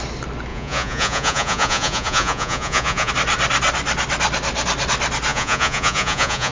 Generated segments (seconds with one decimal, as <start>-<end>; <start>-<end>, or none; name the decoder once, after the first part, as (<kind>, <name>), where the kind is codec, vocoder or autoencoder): 0.5-3.1 (vocoder, Vocos); 5.3-6.5

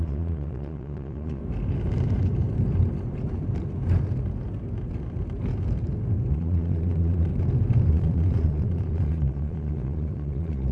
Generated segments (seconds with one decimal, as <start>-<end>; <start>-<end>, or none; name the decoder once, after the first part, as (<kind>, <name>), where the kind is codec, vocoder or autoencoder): 0.0-1.4 (vocoder, Vocos); 6.3-7.3; 7.9-10.7

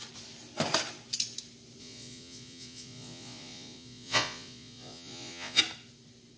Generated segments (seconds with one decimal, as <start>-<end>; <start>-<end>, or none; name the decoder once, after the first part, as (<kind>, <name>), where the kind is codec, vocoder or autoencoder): 1.8-5.6 (vocoder, Vocos)

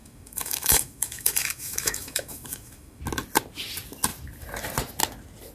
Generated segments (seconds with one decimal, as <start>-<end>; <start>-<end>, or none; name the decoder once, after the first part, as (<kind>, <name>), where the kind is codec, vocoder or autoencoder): 0.0-3.0 (autoencoder, DAC-VAE)

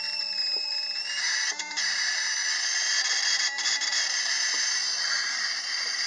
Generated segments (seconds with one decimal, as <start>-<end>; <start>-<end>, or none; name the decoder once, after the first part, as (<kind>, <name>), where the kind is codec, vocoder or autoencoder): 0.0-2.4 (vocoder, BigVGAN v2); 3.4-6.1

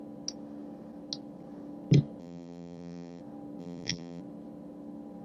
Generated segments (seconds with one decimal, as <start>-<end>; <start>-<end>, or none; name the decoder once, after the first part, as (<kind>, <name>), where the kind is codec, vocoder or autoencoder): 2.2-3.2 (vocoder, BigVGAN v2); 3.6-4.2